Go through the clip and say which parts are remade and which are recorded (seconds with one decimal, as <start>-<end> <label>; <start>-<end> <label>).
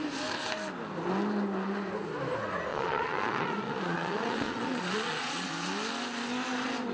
0.0-2.7 recorded; 2.7-5.5 remade; 5.5-6.9 recorded